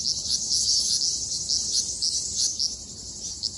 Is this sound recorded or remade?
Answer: recorded